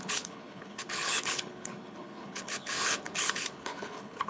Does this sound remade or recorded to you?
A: remade